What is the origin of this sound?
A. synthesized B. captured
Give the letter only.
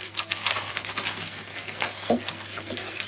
A